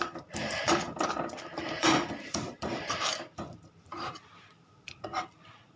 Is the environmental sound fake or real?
fake